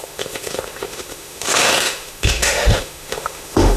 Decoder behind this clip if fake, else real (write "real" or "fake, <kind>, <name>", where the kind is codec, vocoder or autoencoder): fake, autoencoder, DAC-VAE